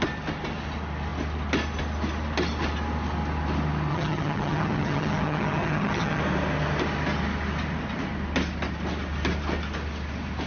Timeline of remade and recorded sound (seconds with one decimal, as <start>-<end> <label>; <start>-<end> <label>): 0.0-3.9 recorded; 3.9-6.2 remade; 6.2-10.5 recorded